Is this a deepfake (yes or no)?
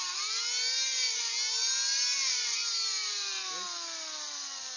no